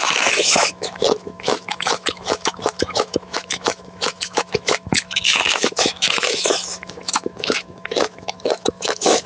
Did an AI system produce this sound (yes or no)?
yes